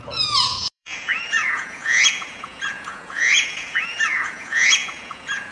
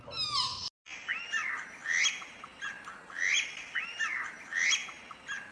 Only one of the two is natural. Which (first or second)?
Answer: second